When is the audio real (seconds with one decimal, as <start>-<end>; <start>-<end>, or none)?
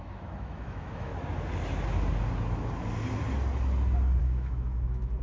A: 1.1-4.2